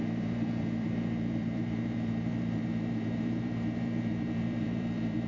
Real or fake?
fake